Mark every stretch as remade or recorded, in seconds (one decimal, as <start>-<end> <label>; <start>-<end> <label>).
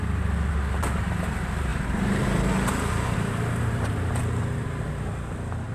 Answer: 0.0-1.7 recorded; 1.7-5.1 remade; 5.1-5.7 recorded